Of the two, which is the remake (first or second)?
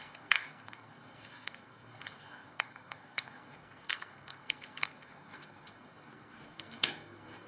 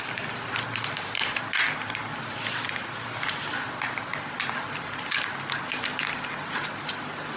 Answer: first